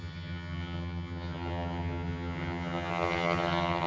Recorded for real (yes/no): no